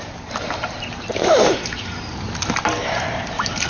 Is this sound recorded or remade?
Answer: remade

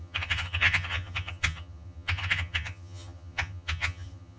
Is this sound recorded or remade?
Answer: remade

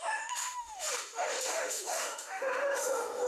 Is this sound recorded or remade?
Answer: remade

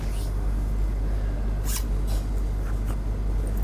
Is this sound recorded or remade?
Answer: recorded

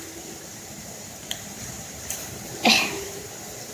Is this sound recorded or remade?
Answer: remade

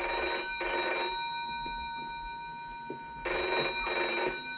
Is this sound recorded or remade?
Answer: recorded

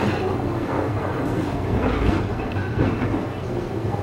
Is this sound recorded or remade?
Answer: remade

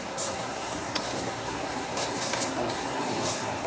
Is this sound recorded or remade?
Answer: remade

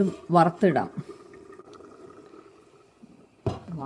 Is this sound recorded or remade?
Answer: remade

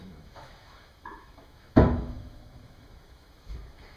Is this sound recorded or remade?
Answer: remade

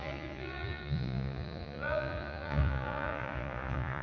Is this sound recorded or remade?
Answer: remade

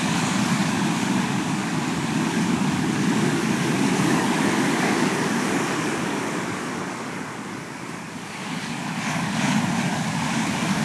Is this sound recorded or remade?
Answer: remade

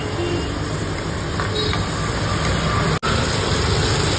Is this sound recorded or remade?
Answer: recorded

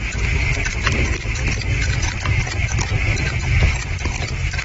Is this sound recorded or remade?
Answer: recorded